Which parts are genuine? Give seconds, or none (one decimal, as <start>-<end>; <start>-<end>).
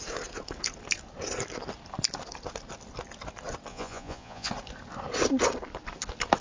0.0-3.7; 4.5-6.4